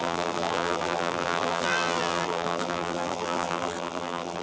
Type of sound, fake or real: fake